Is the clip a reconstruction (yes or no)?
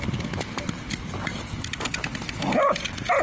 no